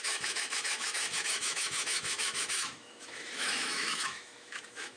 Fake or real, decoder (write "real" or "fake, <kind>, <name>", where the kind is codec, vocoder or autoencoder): fake, autoencoder, DAC-VAE